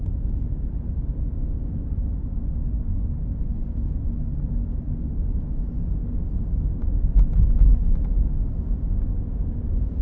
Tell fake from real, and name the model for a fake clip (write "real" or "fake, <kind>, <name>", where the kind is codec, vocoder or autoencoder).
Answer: real